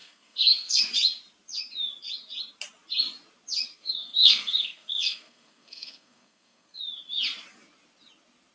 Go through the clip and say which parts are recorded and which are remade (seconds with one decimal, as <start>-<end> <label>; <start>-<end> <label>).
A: 0.0-0.8 remade; 0.8-3.7 recorded; 3.7-6.8 remade; 6.8-8.5 recorded